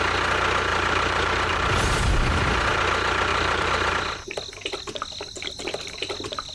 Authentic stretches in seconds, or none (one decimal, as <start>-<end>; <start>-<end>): 0.0-0.7; 1.6-3.3; 3.9-6.5